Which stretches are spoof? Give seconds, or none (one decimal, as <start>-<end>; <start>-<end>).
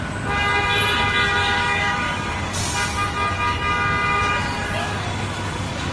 1.4-2.6; 4.8-5.9